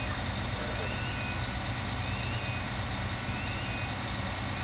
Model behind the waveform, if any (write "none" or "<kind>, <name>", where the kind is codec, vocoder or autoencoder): none